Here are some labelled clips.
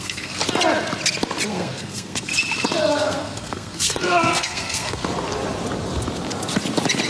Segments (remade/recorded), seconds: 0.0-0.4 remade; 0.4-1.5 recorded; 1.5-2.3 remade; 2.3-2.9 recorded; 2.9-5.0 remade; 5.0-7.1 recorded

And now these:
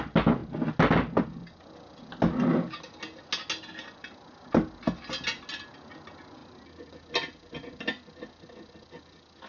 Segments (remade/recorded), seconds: 0.0-9.5 recorded

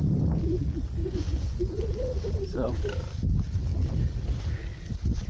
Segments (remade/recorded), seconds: 0.0-1.0 recorded; 1.0-1.8 remade; 1.8-5.3 recorded

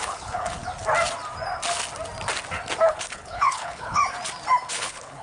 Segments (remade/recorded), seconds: 0.0-0.6 remade; 0.6-2.9 recorded; 2.9-4.0 remade; 4.0-4.7 recorded; 4.7-5.2 remade

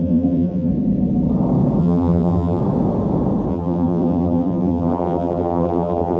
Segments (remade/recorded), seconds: 0.0-0.7 remade; 0.7-1.8 recorded; 1.8-2.6 remade; 2.6-3.5 recorded; 3.5-6.2 remade